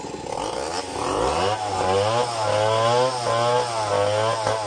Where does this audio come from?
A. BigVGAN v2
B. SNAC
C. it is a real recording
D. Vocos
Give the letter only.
C